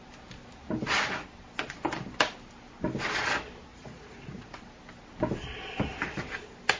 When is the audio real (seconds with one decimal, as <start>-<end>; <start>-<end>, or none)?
0.0-3.7; 4.6-6.8